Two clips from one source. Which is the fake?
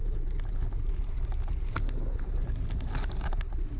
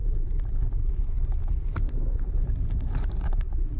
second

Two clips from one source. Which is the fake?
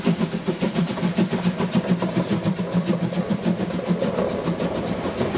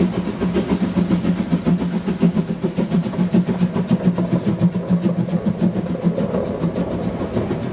first